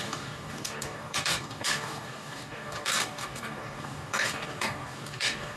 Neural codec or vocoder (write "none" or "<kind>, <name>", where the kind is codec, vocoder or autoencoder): codec, DAC